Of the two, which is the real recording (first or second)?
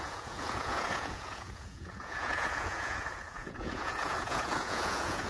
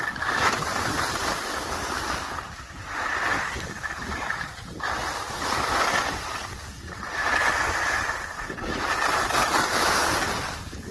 second